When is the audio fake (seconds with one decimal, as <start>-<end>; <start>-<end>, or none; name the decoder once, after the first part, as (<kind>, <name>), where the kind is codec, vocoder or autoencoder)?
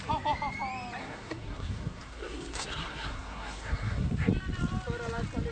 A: 1.0-4.3 (codec, SNAC)